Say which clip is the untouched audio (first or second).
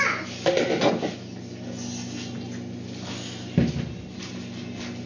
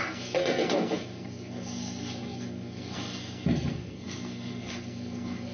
first